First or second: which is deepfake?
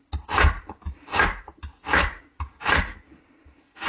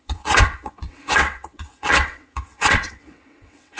second